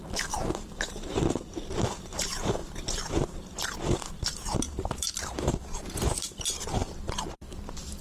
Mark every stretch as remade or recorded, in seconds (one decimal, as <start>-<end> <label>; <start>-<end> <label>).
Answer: 0.0-2.6 remade; 2.6-3.1 recorded; 3.1-3.5 remade; 3.5-4.1 recorded; 4.1-6.8 remade; 6.8-8.0 recorded